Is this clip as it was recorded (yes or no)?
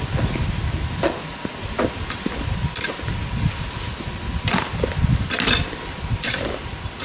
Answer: yes